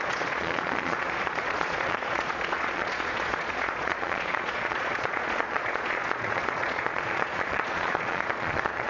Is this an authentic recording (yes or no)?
no